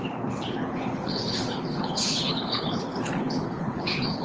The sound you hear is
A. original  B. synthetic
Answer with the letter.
B